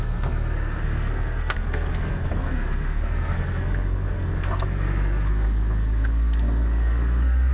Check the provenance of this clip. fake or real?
fake